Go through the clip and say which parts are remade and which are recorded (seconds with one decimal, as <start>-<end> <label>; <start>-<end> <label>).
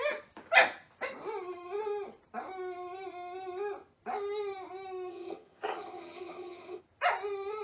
0.0-5.1 recorded; 5.1-6.8 remade; 6.8-7.6 recorded